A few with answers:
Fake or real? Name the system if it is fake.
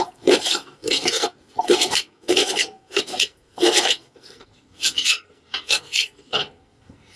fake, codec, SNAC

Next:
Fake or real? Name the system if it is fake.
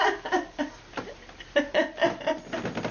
real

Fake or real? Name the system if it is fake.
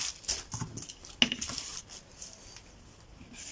real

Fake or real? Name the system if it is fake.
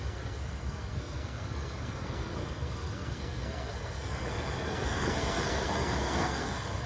fake, codec, SNAC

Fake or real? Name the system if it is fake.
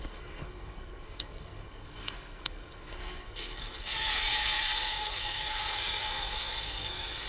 fake, codec, SNAC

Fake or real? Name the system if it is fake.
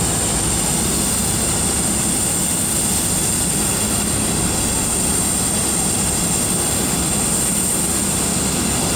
real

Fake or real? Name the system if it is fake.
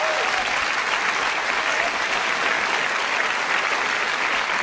real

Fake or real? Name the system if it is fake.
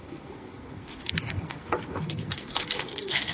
fake, codec, SNAC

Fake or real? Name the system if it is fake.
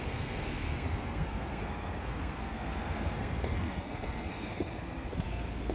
fake, codec, SNAC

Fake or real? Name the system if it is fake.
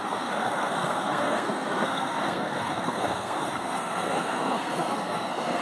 fake, codec, SNAC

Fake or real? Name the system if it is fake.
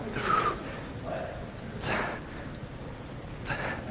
real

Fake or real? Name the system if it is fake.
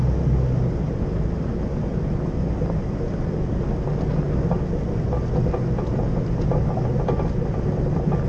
real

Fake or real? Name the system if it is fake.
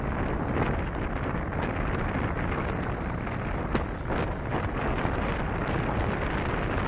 real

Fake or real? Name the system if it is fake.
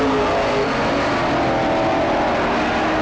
real